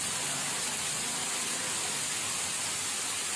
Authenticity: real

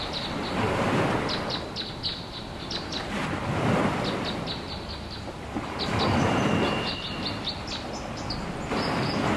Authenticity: real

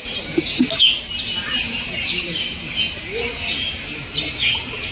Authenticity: real